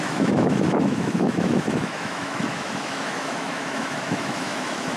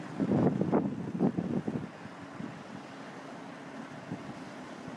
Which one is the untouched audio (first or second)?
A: second